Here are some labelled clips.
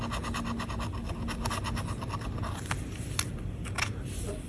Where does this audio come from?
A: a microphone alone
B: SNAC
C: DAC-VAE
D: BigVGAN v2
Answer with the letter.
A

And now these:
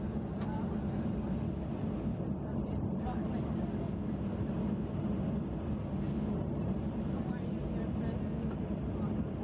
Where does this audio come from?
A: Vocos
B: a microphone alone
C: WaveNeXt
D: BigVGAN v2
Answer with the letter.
B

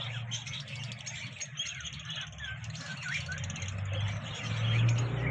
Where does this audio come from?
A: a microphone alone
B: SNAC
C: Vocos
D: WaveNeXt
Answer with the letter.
A